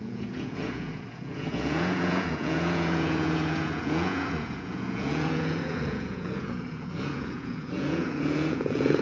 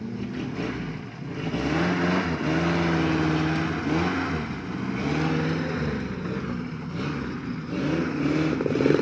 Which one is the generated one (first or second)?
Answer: first